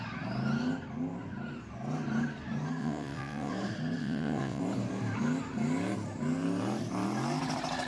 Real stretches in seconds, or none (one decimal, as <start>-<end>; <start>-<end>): 0.0-2.8; 3.5-4.0; 4.6-7.9